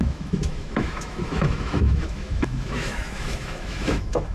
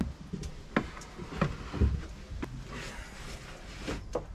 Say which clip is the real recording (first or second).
second